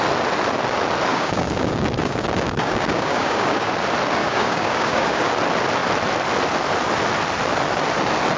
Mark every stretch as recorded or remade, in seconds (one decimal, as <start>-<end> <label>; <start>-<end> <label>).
0.0-1.1 recorded; 1.1-3.7 remade; 3.7-4.2 recorded; 4.2-5.3 remade; 5.3-8.4 recorded